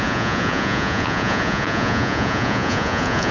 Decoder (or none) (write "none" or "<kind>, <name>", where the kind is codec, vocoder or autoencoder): vocoder, Vocos